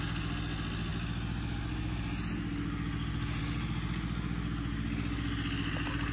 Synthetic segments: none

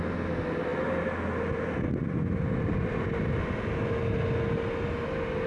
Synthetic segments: none

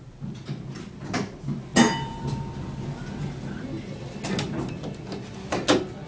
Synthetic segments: none